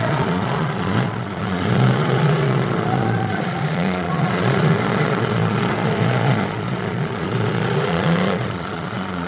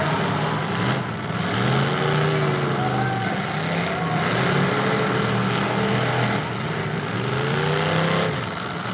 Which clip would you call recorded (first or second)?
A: second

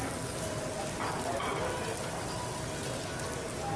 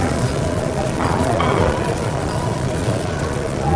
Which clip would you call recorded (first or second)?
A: first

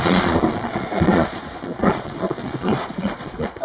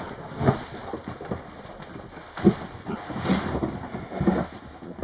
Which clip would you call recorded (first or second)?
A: second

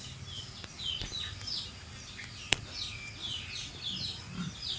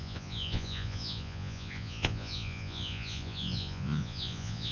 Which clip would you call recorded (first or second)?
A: first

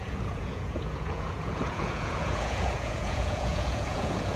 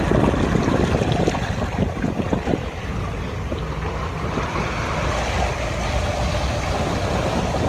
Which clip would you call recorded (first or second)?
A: second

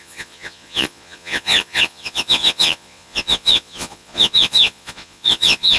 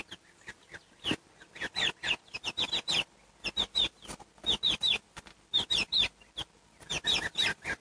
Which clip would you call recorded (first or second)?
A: second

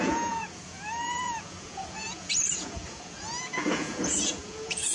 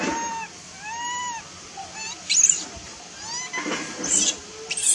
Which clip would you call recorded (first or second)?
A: second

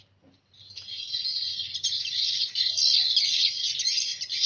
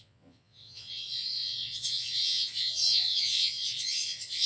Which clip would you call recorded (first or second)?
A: first